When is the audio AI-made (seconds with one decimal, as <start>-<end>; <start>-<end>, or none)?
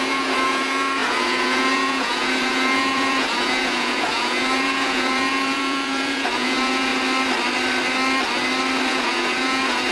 0.0-6.9; 8.9-9.9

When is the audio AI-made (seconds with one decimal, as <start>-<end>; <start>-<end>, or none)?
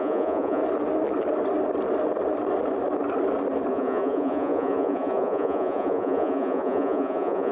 0.0-0.6; 3.7-7.5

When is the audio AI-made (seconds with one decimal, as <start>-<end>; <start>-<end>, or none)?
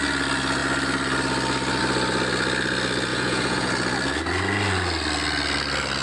3.1-3.7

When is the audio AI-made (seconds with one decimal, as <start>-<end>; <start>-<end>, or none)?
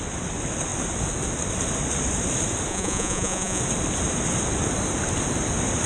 2.7-3.6